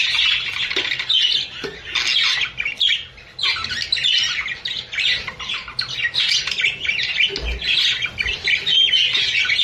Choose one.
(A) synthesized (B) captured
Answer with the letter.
B